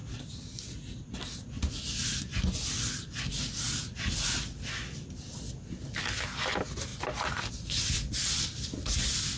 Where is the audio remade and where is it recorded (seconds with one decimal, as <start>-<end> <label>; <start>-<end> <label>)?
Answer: 0.0-9.4 recorded